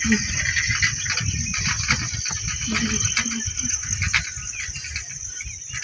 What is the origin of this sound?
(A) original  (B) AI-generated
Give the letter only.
A